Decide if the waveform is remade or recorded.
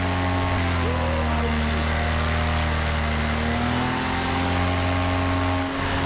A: recorded